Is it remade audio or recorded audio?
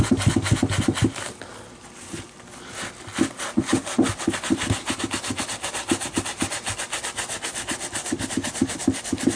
recorded